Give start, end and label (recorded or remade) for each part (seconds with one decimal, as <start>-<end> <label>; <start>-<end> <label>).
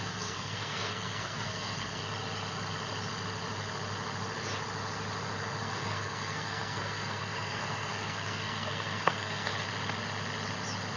0.0-2.0 remade; 2.0-5.6 recorded; 5.6-9.5 remade; 9.5-11.0 recorded